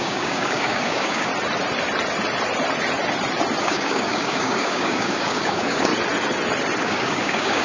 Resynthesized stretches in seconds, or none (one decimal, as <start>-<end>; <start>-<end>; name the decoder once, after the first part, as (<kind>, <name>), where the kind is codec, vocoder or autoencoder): 0.0-1.3 (codec, DAC); 3.6-5.9; 6.8-7.6